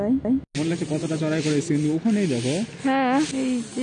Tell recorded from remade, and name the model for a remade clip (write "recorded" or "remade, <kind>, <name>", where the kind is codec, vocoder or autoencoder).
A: recorded